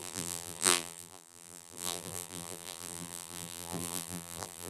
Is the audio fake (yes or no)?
yes